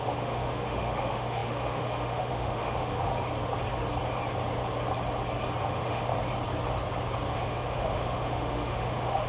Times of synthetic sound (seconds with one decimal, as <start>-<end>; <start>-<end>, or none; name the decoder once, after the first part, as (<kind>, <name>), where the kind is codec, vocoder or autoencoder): 0.0-3.1 (autoencoder, DAC-VAE); 5.6-6.1; 7.3-9.3